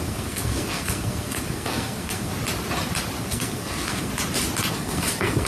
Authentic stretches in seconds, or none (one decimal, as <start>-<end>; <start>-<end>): 2.3-3.2; 4.1-4.7